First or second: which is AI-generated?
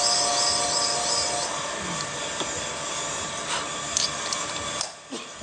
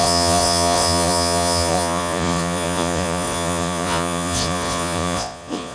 second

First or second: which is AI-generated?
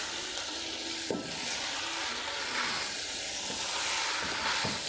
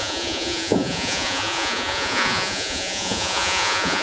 second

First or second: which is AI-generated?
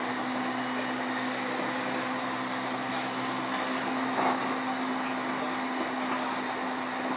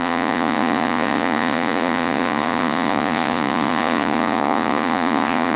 second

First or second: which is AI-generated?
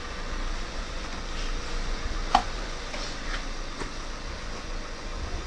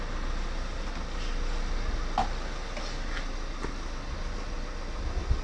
first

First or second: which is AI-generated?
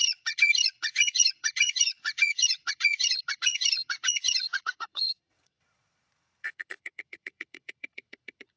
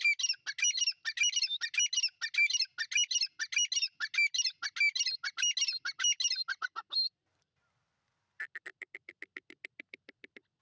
first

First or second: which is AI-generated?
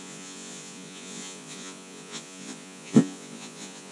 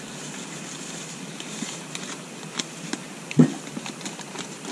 first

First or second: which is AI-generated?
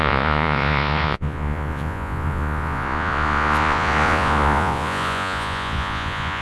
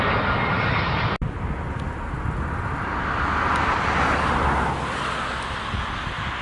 first